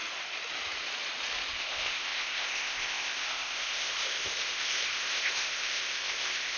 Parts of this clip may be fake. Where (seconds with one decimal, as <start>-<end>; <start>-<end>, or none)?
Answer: 1.6-6.6